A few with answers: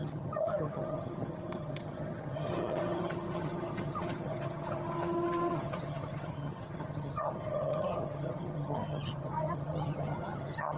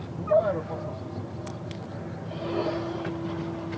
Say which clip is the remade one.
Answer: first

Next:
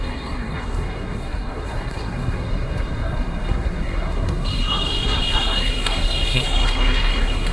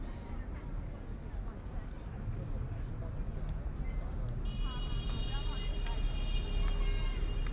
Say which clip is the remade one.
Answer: first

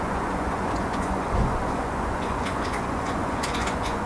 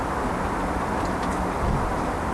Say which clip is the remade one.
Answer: first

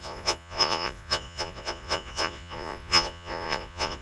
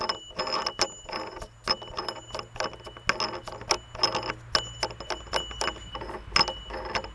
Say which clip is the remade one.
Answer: first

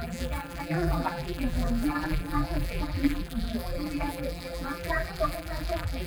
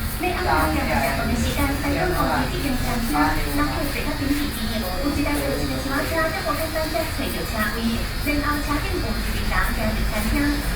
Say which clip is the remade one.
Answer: first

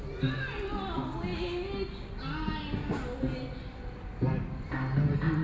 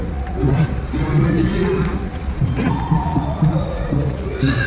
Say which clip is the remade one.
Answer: second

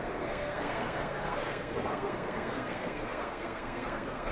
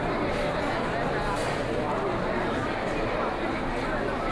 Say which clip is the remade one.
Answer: first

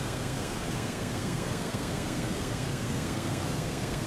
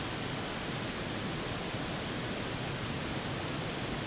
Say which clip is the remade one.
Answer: first